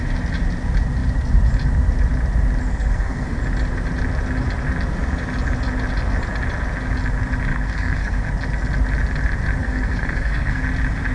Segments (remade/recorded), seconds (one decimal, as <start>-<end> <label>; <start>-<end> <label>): 0.0-2.7 recorded; 2.7-3.4 remade; 3.4-7.5 recorded; 7.5-8.3 remade; 8.3-9.6 recorded; 9.6-10.6 remade; 10.6-11.1 recorded